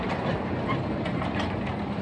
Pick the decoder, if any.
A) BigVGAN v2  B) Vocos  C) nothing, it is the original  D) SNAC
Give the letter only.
C